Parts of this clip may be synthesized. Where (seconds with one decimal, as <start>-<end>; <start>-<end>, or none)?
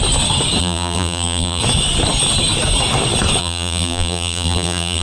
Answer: 0.6-1.6; 3.4-5.0